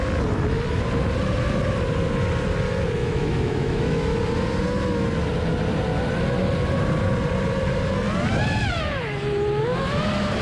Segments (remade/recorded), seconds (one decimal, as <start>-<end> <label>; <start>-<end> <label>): 0.0-3.0 recorded; 3.0-4.2 remade; 4.2-10.4 recorded